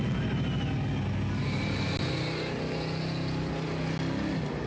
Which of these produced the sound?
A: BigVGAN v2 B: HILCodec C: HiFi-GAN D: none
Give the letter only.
D